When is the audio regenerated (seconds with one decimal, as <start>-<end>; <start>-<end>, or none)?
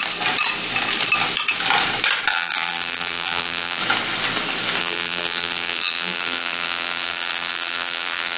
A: 2.3-3.8; 4.8-8.4